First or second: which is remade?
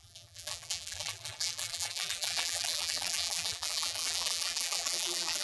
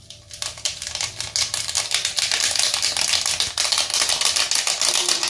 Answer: first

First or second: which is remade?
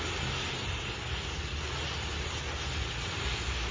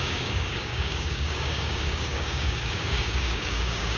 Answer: second